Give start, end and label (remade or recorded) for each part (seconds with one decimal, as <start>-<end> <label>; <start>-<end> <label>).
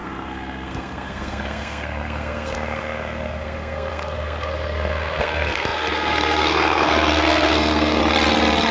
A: 0.0-8.0 remade; 8.0-8.7 recorded